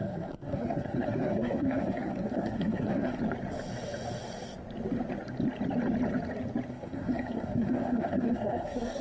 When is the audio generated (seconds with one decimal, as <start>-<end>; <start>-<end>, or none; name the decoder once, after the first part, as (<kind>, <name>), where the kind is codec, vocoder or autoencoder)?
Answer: 0.0-3.2 (codec, SNAC); 6.7-9.0